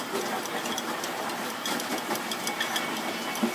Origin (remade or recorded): recorded